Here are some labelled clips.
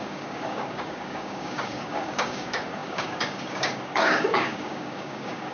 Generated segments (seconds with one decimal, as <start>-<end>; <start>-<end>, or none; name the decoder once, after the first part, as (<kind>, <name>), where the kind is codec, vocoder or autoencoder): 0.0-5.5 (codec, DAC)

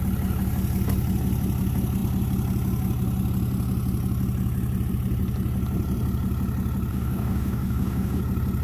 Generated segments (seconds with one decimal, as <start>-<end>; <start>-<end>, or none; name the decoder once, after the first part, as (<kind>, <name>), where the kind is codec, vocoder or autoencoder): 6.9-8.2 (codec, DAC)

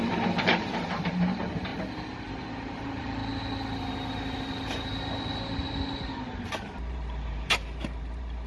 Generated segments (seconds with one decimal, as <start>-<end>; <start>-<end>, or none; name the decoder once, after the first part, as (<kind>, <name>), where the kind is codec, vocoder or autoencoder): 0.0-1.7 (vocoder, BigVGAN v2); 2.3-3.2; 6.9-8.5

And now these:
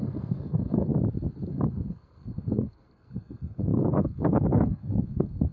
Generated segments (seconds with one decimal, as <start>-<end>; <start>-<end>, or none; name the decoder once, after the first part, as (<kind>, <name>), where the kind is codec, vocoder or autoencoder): 0.0-0.9 (codec, SNAC); 1.5-5.5